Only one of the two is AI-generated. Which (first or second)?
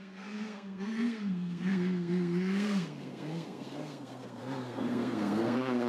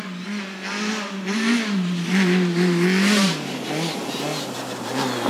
first